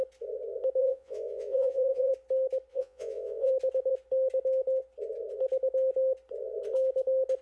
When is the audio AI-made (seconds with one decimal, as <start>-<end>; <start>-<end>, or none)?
0.8-2.1; 2.7-3.5